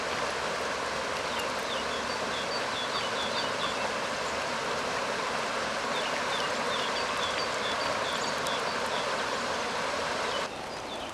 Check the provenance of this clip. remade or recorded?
recorded